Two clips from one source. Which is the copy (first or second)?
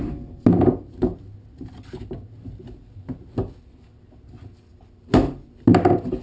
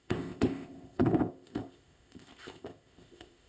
second